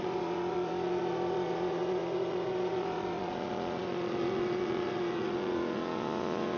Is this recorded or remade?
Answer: remade